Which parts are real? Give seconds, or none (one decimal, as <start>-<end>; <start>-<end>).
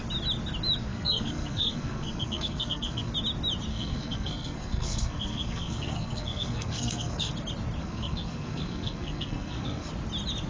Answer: 0.0-0.9; 3.1-3.7; 7.3-7.8; 9.9-10.5